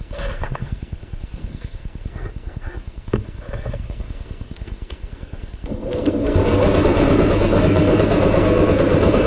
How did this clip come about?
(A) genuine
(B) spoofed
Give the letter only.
B